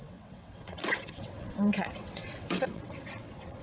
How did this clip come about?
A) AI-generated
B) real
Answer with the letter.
A